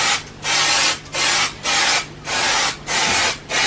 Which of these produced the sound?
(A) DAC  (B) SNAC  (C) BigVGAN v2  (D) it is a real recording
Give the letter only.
D